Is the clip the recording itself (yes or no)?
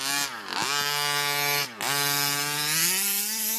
yes